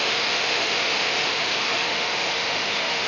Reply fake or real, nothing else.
fake